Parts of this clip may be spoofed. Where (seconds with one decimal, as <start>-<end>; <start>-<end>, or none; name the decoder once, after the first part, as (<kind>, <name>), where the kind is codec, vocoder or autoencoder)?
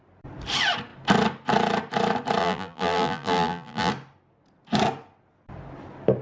2.4-3.9 (vocoder, BigVGAN v2)